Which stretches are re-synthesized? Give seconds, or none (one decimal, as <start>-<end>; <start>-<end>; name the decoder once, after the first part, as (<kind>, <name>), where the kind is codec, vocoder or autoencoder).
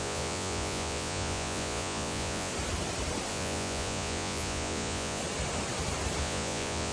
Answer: 0.0-2.5 (vocoder, Vocos); 3.3-5.2; 6.2-6.9